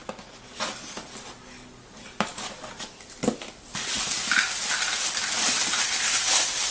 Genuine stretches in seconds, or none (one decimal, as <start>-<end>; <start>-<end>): 0.0-6.7